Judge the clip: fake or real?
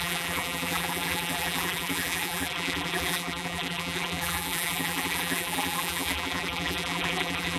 fake